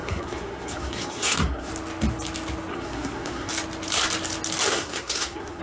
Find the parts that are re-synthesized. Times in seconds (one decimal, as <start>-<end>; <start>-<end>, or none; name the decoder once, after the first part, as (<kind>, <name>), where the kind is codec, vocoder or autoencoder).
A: 0.0-1.7 (codec, SNAC); 2.7-3.5; 4.7-5.6